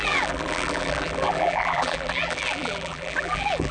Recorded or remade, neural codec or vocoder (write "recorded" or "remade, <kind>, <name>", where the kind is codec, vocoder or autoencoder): remade, vocoder, BigVGAN v2